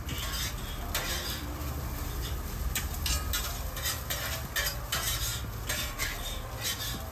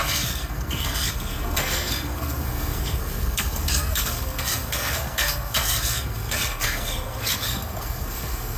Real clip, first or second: first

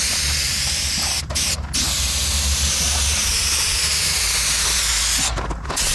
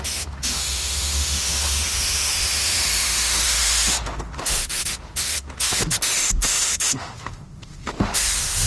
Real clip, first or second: first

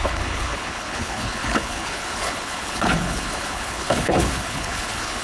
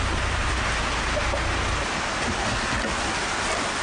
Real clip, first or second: second